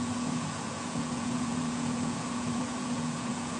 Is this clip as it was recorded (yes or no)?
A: no